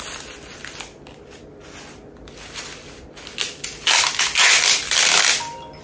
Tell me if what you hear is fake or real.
real